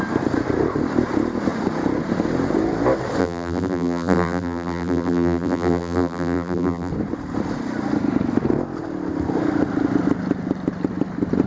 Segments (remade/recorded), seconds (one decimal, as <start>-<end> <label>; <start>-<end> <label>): 0.0-3.2 recorded; 3.2-6.9 remade; 6.9-11.5 recorded